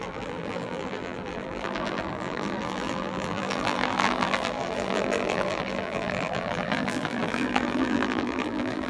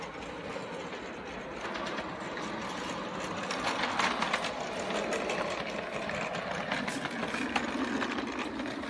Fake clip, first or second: first